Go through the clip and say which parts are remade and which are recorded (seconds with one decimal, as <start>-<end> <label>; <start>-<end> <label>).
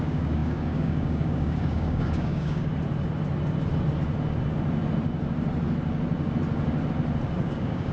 0.0-2.7 remade; 2.7-7.4 recorded; 7.4-7.9 remade